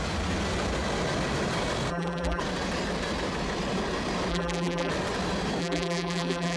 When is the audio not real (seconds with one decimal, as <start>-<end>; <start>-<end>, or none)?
1.9-2.4; 4.3-4.9; 5.6-6.6